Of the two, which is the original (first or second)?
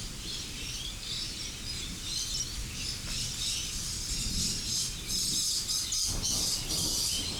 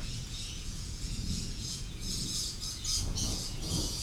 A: first